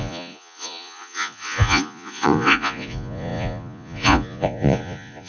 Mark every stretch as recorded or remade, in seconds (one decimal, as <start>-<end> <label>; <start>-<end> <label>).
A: 0.0-5.3 remade